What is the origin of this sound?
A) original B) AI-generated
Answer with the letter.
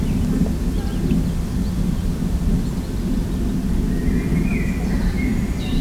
A